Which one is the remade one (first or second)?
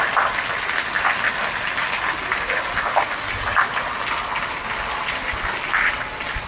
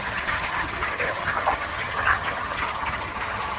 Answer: second